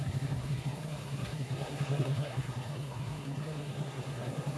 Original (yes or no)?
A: no